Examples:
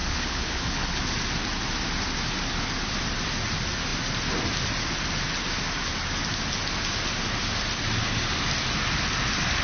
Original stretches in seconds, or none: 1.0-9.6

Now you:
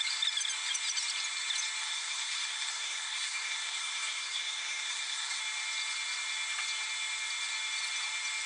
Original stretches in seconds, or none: 0.0-1.8; 5.4-8.5